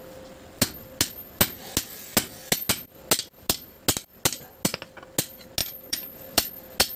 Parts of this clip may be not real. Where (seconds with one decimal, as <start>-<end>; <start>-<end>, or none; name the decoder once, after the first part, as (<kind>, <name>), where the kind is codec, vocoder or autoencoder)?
5.6-6.5 (vocoder, BigVGAN v2)